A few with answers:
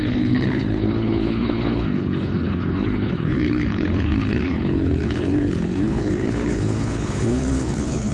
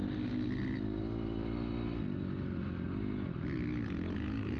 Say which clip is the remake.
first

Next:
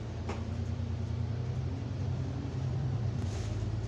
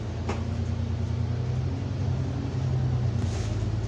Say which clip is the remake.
first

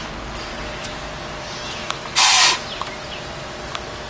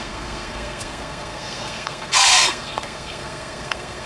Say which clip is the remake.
second